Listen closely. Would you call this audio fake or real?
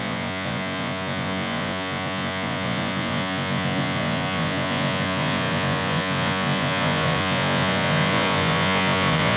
fake